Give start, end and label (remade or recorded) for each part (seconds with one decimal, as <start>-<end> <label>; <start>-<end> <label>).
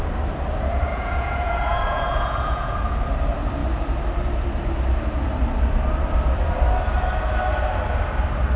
0.0-0.9 recorded; 0.9-2.8 remade; 2.8-8.6 recorded